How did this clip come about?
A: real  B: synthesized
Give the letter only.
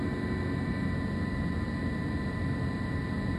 A